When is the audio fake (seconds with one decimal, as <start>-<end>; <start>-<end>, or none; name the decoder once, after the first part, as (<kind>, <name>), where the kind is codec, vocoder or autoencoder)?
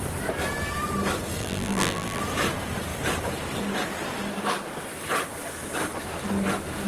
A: 1.4-2.2 (vocoder, BigVGAN v2)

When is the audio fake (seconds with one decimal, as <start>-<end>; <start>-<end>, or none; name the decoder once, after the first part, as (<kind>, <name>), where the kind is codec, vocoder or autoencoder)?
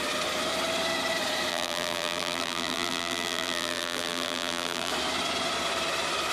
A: 1.5-4.9 (vocoder, BigVGAN v2)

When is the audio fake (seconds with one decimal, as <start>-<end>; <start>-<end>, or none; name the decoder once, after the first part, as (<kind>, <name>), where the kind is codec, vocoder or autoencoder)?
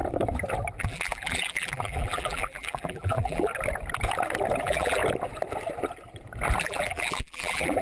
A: 0.8-3.5 (vocoder, BigVGAN v2); 4.6-5.0; 6.6-7.8